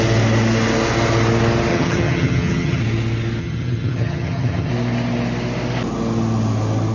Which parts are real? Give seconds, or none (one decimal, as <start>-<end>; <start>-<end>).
0.0-1.7; 2.8-3.4; 4.7-6.9